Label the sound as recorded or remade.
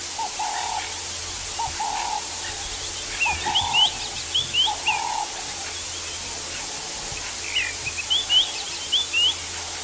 recorded